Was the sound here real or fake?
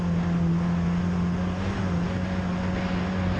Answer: real